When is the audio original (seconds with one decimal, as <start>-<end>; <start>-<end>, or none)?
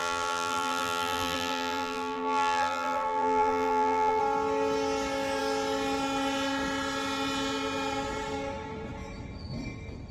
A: 4.2-10.1